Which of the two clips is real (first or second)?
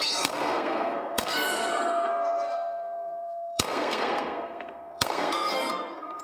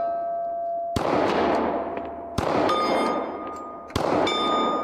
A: second